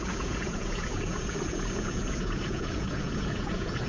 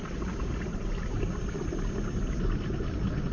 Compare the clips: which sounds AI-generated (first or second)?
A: first